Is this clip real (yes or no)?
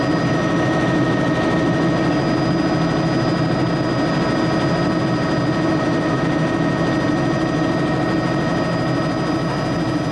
yes